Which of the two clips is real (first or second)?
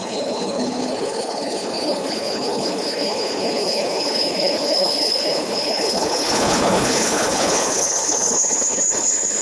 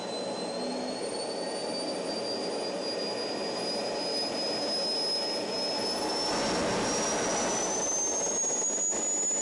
second